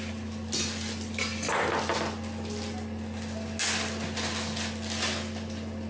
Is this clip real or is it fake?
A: real